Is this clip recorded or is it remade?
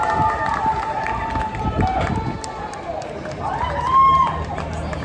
recorded